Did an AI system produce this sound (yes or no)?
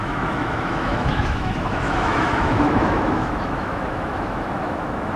yes